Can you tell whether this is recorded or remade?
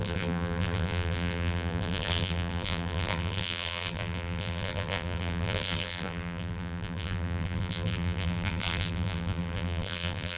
remade